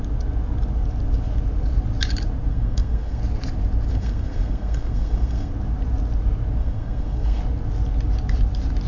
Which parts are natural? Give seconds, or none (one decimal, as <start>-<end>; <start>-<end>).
0.0-2.5; 3.2-3.9; 5.5-6.6; 7.4-8.9